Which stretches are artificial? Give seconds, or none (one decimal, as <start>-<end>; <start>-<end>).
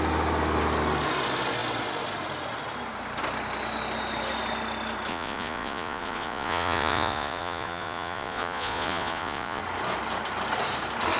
5.1-9.6